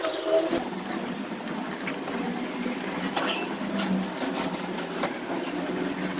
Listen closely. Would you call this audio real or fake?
real